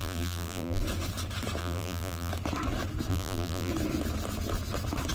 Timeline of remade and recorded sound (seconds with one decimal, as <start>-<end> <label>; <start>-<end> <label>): 0.0-0.8 remade; 0.8-1.6 recorded; 1.6-2.3 remade; 2.3-3.1 recorded; 3.1-3.7 remade; 3.7-5.1 recorded